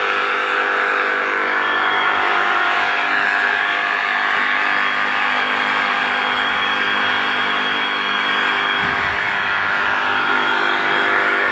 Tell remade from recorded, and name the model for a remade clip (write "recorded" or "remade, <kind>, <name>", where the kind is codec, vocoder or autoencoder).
remade, codec, DAC